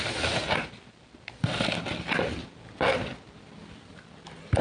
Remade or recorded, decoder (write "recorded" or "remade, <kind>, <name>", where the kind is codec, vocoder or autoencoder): recorded